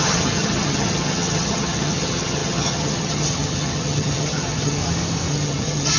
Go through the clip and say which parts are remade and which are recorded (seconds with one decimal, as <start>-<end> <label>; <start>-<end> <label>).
0.0-4.8 remade; 4.8-5.3 recorded; 5.3-6.0 remade